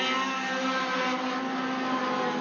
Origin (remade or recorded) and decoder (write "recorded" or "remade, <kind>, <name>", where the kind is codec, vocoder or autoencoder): recorded